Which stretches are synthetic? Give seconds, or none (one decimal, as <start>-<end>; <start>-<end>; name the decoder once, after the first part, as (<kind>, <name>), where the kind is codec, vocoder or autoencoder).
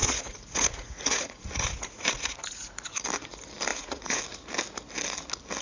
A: 0.0-3.0 (vocoder, Vocos); 3.7-4.2